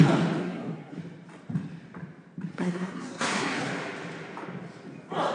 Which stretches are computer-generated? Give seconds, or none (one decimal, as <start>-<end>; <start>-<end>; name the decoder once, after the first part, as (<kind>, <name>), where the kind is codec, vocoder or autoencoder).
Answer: 0.4-1.0 (codec, SNAC); 2.5-3.7